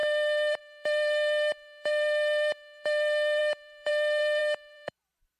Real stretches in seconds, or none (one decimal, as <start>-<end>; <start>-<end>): none